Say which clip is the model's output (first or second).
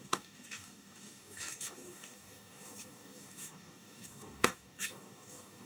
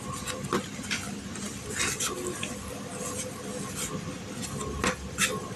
first